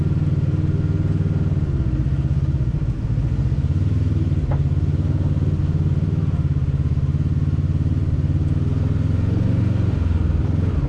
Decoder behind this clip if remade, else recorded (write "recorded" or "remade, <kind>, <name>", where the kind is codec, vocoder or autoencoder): recorded